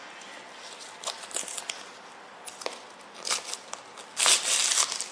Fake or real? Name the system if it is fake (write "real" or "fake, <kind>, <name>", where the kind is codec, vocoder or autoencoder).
real